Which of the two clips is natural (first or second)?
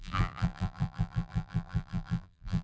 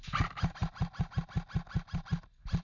second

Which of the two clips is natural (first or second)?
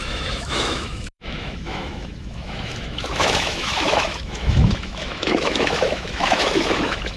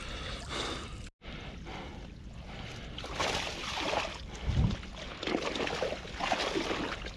second